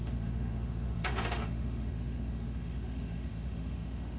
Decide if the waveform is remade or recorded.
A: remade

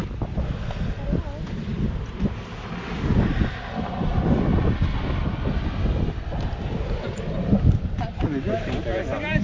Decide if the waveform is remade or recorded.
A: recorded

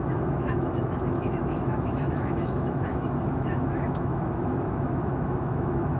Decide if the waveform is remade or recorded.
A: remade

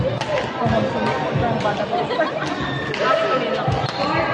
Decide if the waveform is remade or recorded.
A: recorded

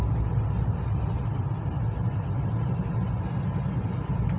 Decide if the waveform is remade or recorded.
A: recorded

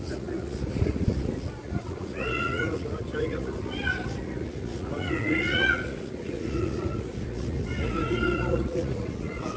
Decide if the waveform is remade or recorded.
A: remade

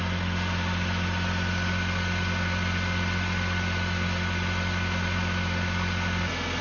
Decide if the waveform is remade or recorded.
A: recorded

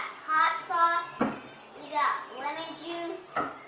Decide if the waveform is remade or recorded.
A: recorded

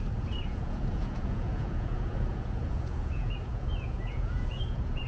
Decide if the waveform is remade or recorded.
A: remade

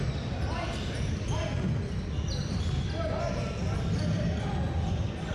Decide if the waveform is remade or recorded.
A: recorded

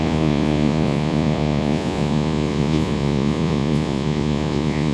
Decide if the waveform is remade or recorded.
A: remade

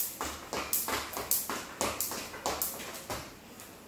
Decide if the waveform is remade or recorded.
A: recorded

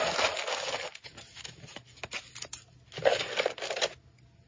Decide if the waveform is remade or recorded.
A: recorded